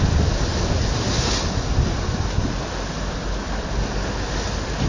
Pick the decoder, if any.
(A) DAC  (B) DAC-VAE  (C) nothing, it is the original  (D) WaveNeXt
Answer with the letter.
C